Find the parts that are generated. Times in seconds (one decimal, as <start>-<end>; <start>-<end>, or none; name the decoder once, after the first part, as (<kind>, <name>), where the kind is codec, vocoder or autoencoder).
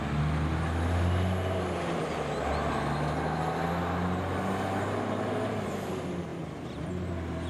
6.3-6.9 (vocoder, BigVGAN v2)